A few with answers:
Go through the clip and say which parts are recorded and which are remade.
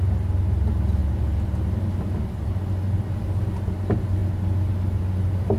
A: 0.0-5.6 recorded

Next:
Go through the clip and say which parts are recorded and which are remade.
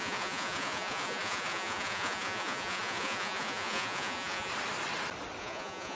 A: 0.0-4.5 remade; 4.5-5.4 recorded; 5.4-6.0 remade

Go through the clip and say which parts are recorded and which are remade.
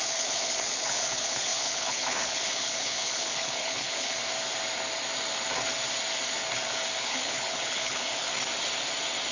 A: 0.0-4.2 remade; 4.2-7.0 recorded; 7.0-8.3 remade; 8.3-9.3 recorded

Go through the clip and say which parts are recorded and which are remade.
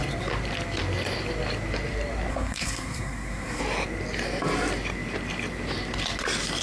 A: 0.0-2.3 recorded; 2.3-3.6 remade; 3.6-6.6 recorded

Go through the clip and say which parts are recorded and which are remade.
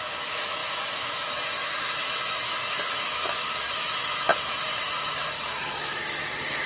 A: 0.0-6.7 remade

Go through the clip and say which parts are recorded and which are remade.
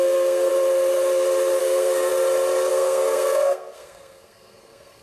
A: 0.0-0.5 remade; 0.5-1.6 recorded; 1.6-2.1 remade; 2.1-2.7 recorded; 2.7-5.0 remade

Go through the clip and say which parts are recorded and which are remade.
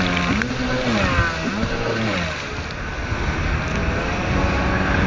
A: 0.0-3.8 recorded; 3.8-4.3 remade; 4.3-5.1 recorded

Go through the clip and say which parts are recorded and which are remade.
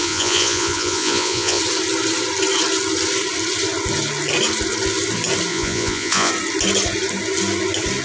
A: 0.0-1.6 remade; 1.6-5.5 recorded; 5.5-6.3 remade; 6.3-8.0 recorded